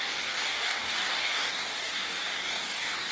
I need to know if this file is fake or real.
fake